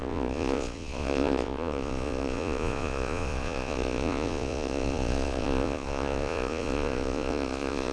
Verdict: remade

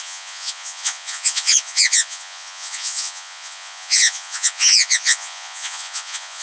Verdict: remade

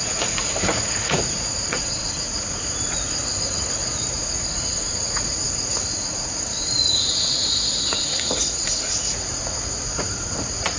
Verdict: remade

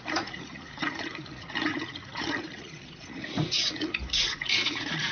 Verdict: remade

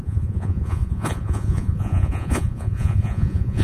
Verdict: remade